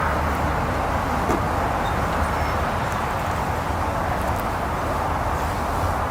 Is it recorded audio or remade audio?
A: recorded